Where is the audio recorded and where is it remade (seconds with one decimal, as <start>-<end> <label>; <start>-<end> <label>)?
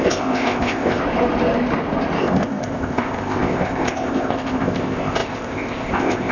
0.0-1.0 remade; 1.0-2.2 recorded; 2.2-6.3 remade